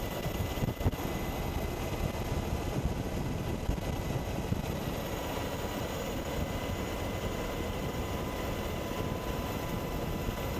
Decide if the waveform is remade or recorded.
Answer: recorded